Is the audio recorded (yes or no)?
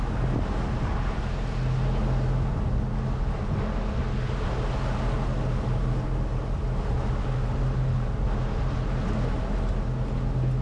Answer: yes